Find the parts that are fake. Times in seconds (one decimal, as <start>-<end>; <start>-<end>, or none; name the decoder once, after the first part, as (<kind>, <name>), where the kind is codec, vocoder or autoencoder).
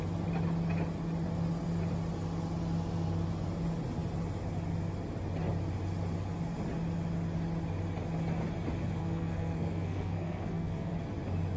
9.0-10.9 (codec, SNAC)